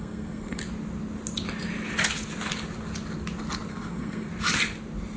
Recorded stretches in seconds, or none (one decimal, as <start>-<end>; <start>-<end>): 0.6-3.7; 4.3-5.2